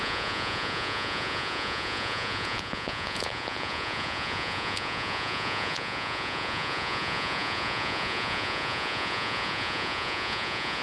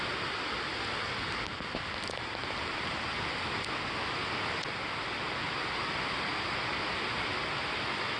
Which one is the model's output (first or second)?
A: first